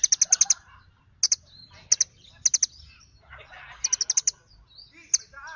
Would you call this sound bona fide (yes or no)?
yes